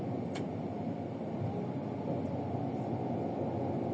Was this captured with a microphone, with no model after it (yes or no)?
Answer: yes